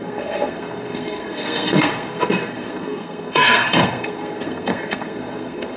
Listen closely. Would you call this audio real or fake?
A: fake